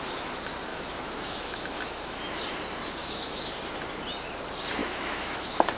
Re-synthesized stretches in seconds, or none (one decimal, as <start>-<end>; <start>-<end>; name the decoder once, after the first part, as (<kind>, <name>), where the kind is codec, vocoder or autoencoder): 0.7-2.4 (autoencoder, DAC-VAE); 3.0-3.5; 4.8-5.8